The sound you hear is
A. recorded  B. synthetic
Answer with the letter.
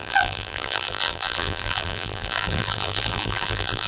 B